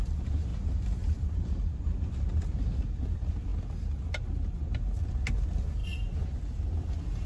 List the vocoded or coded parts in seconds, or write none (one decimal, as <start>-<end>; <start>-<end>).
0.5-1.2